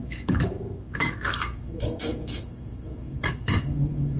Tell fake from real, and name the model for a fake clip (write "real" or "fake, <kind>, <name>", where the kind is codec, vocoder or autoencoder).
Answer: fake, autoencoder, DAC-VAE